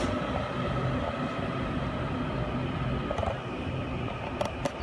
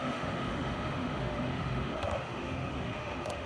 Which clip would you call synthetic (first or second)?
second